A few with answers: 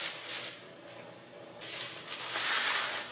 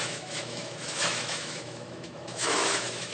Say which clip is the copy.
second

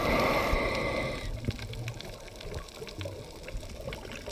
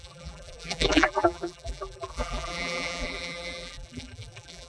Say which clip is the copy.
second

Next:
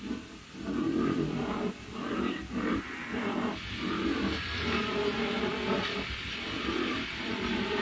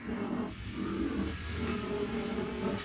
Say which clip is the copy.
first